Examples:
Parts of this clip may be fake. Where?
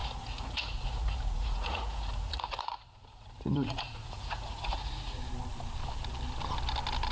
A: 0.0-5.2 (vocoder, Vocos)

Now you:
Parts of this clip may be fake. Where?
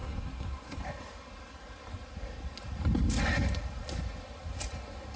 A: 0.0-0.8 (codec, SNAC)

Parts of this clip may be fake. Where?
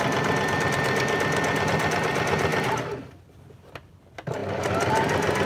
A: none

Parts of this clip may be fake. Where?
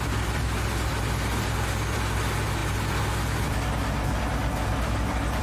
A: none